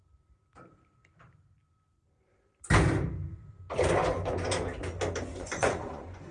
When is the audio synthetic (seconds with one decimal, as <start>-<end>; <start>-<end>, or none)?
5.3-6.3